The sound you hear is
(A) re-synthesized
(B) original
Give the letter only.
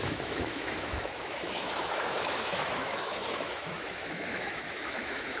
A